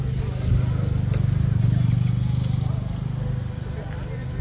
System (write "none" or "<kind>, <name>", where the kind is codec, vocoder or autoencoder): none